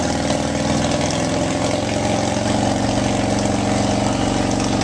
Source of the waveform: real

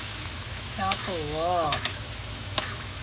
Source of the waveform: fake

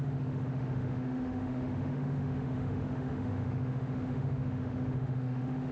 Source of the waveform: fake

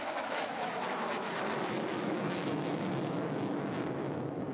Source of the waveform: fake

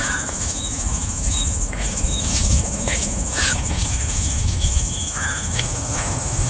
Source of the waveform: fake